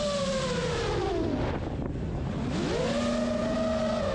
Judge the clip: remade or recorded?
recorded